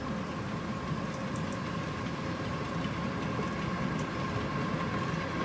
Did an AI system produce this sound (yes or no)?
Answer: no